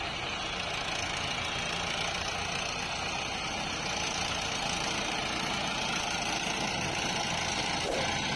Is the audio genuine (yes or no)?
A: yes